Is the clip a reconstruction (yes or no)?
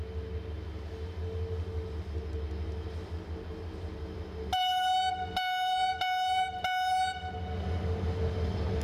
no